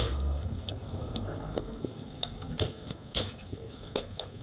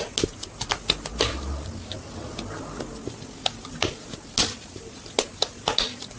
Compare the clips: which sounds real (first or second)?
second